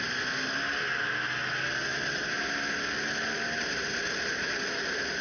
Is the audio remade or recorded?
recorded